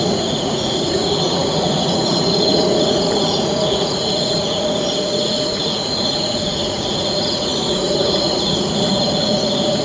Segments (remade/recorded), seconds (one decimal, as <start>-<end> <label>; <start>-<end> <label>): 0.0-9.8 remade